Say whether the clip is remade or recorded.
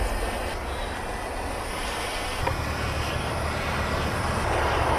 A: recorded